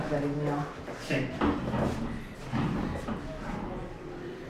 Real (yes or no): yes